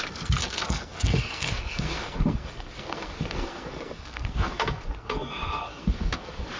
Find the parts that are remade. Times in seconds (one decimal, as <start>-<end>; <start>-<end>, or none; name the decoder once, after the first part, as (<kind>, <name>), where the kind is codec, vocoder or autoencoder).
0.0-6.6 (codec, SNAC)